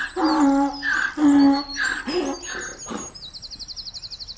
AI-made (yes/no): no